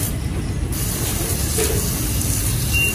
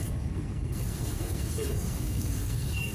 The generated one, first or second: second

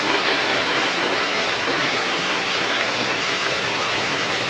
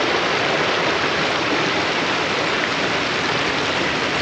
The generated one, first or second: first